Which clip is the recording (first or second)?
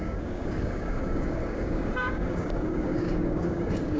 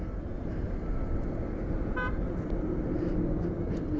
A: second